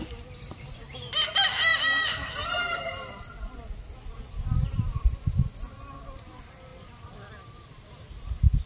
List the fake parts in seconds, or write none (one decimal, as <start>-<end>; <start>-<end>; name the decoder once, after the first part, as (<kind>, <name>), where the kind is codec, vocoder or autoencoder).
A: none